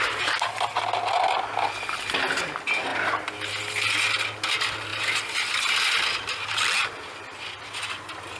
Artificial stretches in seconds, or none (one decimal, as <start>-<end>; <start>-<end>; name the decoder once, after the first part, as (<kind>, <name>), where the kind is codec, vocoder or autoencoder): none